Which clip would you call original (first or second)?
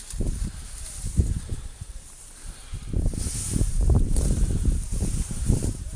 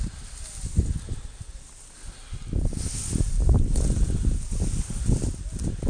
second